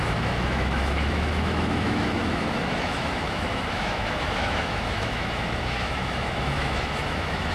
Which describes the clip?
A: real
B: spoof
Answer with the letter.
B